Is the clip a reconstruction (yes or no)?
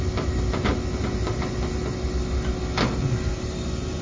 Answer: no